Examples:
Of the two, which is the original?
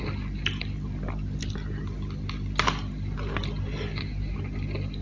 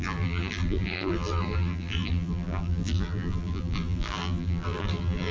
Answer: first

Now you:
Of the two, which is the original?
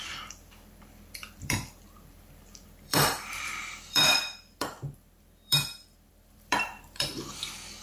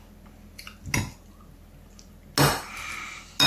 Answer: second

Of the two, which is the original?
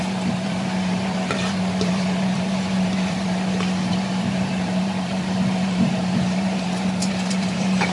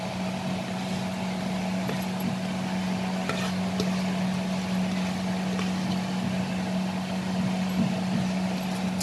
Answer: second